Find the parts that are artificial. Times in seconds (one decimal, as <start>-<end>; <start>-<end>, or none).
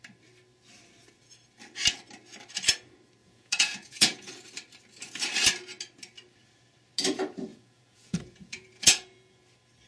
3.2-4.3; 7.5-9.4